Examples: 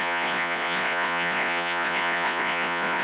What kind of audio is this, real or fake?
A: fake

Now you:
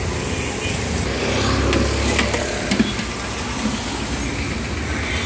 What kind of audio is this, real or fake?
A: real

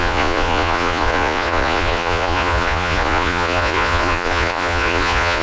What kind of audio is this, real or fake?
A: fake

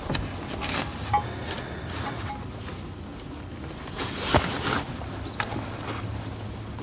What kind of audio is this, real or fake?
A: real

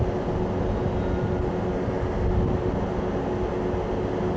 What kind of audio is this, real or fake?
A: real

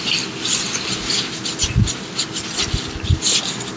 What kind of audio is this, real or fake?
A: real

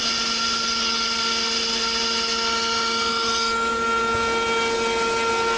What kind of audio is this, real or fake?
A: real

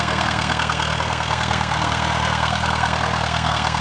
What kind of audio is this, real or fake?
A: fake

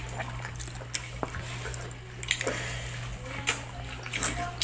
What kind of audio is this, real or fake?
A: real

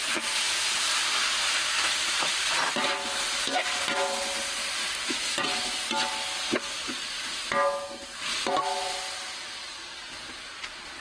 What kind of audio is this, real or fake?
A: real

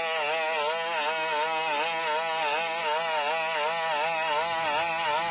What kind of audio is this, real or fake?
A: real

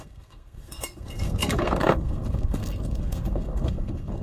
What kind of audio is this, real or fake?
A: fake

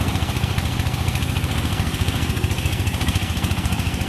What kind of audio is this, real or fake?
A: fake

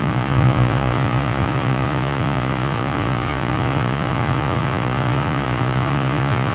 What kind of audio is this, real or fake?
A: fake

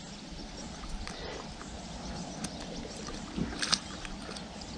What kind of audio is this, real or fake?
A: real